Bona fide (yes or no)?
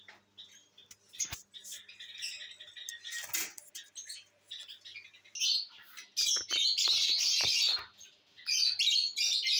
yes